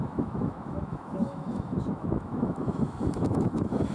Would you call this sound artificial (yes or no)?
yes